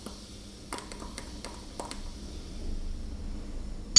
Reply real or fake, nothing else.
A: real